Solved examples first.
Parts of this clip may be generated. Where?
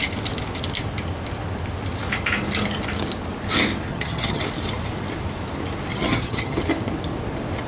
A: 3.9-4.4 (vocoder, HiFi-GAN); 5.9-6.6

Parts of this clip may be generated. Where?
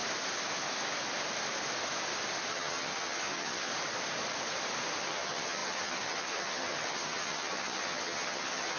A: 2.5-3.7 (vocoder, HiFi-GAN); 5.0-8.8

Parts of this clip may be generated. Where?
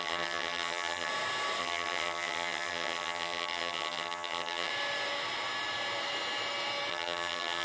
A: 0.0-1.1 (vocoder, HiFi-GAN); 1.6-4.7; 6.9-7.6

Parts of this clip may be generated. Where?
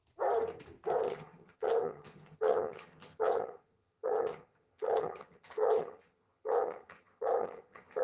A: 1.0-8.0 (vocoder, HiFi-GAN)